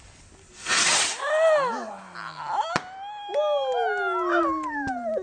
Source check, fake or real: real